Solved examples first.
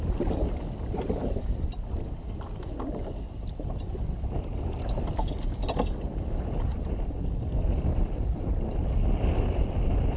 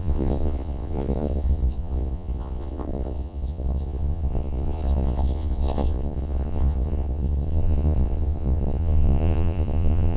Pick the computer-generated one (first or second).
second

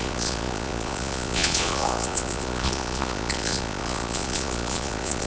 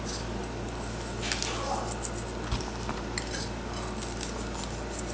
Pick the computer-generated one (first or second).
first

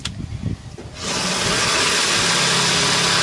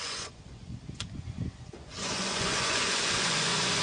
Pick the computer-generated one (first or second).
second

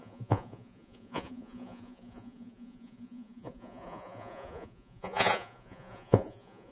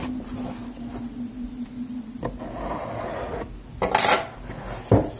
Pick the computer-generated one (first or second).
first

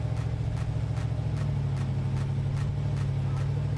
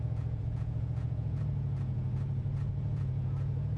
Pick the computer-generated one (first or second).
second